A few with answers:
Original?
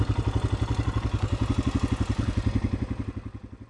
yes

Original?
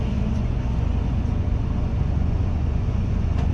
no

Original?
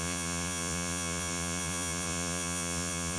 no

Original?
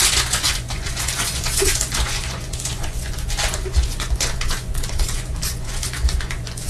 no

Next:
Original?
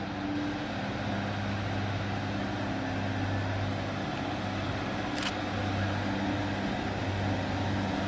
yes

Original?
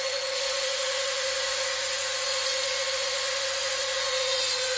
no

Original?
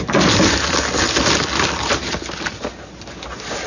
yes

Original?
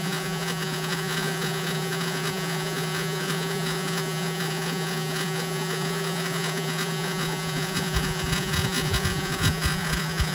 no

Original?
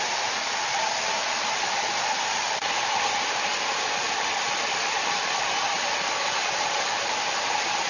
yes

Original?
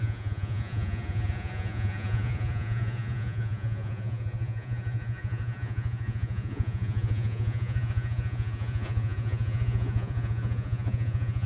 no